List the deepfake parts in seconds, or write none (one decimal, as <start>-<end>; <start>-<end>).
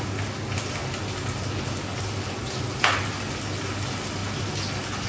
none